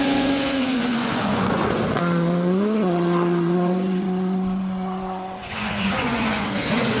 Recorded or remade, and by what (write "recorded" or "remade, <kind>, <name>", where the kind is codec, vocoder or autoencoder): remade, vocoder, Vocos